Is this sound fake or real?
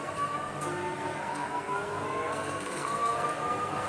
fake